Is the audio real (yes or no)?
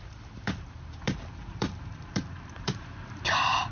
no